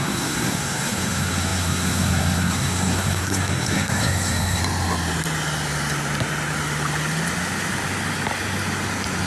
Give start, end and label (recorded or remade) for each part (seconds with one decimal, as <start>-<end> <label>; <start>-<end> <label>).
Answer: 0.0-4.6 remade; 4.6-9.3 recorded